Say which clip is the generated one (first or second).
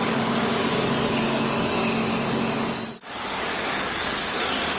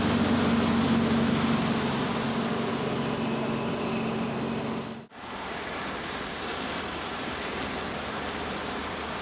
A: first